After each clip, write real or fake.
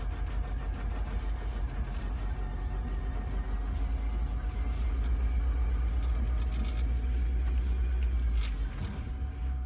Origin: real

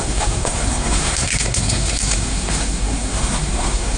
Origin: fake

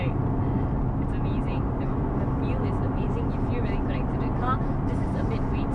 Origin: real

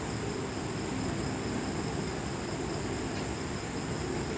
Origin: real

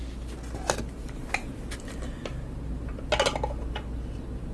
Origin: real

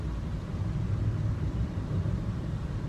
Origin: fake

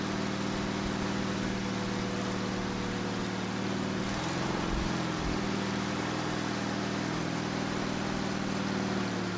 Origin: real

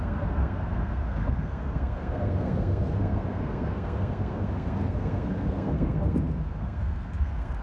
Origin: fake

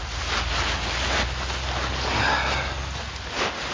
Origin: real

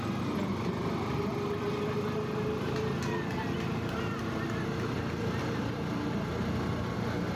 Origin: real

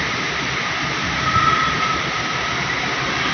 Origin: real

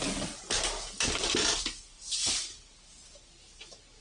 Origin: real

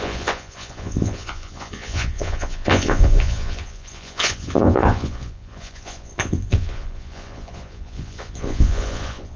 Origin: fake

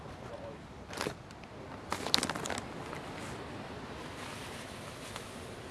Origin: real